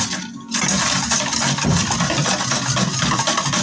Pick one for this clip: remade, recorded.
recorded